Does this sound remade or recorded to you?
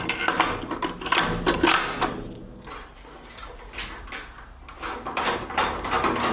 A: recorded